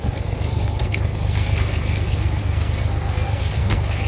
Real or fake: fake